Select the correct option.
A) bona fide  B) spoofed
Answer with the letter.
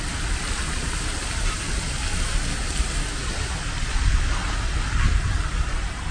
A